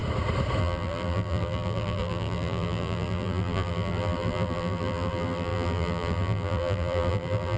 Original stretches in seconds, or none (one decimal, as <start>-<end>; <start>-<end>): 0.0-0.6